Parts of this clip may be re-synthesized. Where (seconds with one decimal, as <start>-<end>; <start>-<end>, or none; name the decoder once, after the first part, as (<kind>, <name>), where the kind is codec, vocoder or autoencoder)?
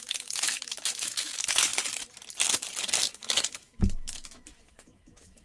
0.0-1.7 (autoencoder, DAC-VAE); 3.1-5.4